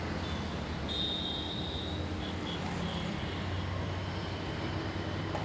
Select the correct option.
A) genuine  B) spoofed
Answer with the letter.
A